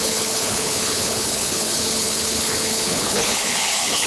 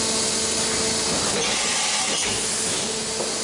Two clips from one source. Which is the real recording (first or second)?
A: second